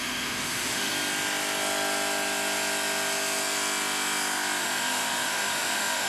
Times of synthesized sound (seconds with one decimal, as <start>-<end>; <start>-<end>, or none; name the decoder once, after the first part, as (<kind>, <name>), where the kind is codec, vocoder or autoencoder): 0.0-0.9 (autoencoder, DAC-VAE); 4.6-6.1